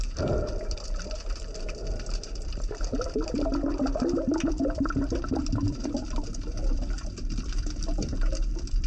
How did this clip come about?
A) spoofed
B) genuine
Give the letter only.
A